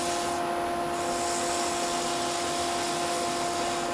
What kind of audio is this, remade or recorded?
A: recorded